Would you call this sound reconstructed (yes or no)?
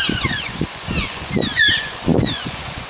yes